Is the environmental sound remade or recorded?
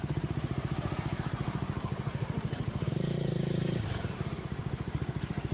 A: remade